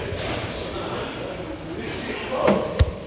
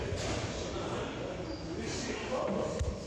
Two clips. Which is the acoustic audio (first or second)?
second